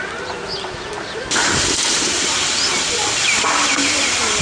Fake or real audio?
real